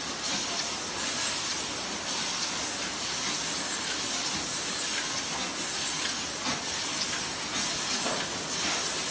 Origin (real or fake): real